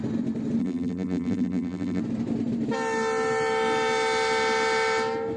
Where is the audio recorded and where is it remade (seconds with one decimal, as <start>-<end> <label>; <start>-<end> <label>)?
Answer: 0.0-0.6 recorded; 0.6-2.0 remade; 2.0-5.4 recorded